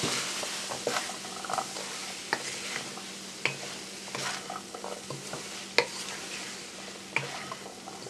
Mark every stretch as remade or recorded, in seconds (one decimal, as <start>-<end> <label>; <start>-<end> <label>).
0.0-8.1 recorded